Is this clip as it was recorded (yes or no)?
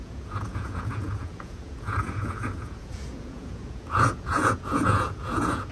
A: no